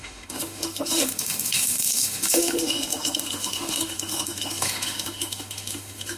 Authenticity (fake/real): fake